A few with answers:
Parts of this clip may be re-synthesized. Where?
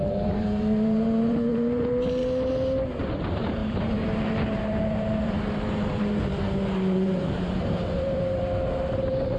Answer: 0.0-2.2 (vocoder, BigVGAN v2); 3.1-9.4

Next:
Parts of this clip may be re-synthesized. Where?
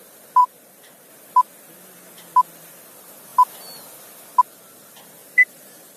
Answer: 0.4-1.1 (vocoder, BigVGAN v2); 5.2-6.0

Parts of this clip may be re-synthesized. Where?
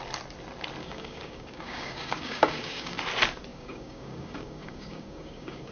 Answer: 0.8-3.0 (codec, DAC); 3.5-5.7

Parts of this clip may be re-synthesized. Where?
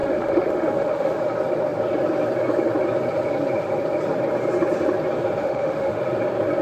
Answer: 0.0-1.2 (autoencoder, DAC-VAE); 5.4-6.0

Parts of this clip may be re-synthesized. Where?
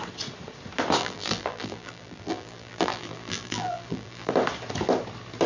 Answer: 1.0-4.3 (vocoder, BigVGAN v2)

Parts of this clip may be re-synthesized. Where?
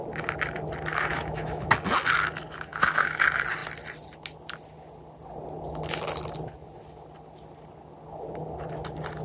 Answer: 1.1-1.7 (autoencoder, DAC-VAE); 2.7-3.2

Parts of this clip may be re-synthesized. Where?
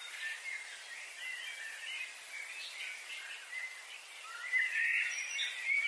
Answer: 0.0-0.7 (vocoder, BigVGAN v2); 4.2-5.9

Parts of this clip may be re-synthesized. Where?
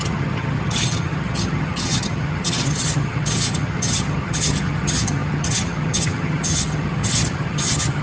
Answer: 0.0-8.0 (vocoder, HiFi-GAN)